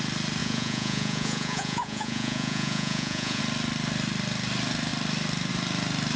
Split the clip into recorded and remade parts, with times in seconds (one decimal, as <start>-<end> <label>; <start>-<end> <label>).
0.0-0.4 recorded; 0.4-3.4 remade; 3.4-6.2 recorded